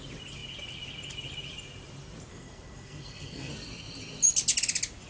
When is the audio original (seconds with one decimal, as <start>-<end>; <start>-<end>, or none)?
0.0-2.3; 3.5-5.1